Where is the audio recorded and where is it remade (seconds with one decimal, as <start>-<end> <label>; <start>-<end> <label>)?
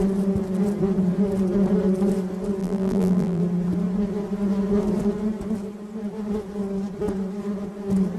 0.0-2.6 recorded; 2.6-3.4 remade; 3.4-8.2 recorded